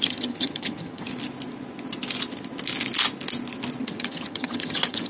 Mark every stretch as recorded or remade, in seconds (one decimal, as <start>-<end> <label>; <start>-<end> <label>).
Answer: 0.0-1.1 remade; 1.1-3.8 recorded; 3.8-5.1 remade

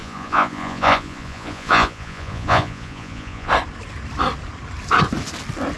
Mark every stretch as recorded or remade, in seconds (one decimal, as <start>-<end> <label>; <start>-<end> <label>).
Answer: 0.0-3.5 remade; 3.5-5.8 recorded

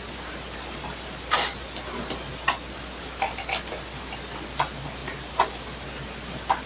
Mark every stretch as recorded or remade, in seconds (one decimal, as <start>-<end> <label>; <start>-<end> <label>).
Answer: 0.0-6.7 recorded

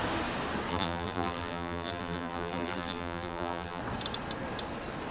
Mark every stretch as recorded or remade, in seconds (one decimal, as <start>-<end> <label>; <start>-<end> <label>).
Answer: 0.0-0.7 recorded; 0.7-3.8 remade; 3.8-5.1 recorded

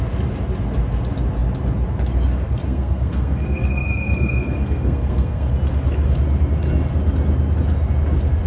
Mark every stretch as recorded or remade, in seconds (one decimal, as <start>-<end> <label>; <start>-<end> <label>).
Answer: 0.0-2.6 recorded; 2.6-5.5 remade; 5.5-8.5 recorded

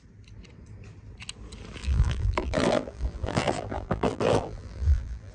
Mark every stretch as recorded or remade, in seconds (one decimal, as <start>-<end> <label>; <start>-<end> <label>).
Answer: 0.0-1.8 recorded; 1.8-5.3 remade